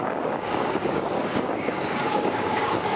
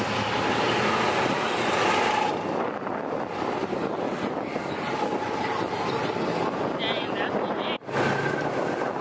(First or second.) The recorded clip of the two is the second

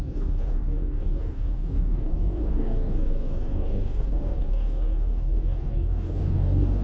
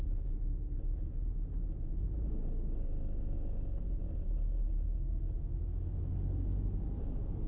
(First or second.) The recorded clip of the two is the second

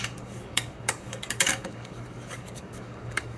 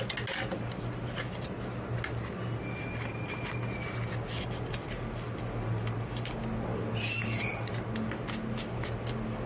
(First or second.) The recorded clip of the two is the second